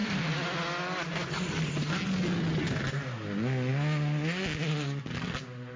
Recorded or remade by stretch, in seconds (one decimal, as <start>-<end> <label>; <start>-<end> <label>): 0.0-5.8 recorded